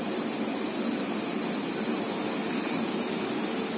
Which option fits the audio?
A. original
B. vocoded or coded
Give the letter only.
A